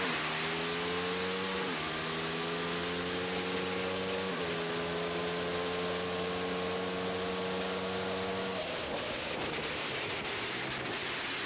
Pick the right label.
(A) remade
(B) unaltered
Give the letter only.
B